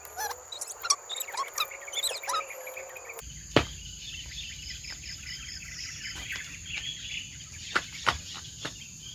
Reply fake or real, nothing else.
real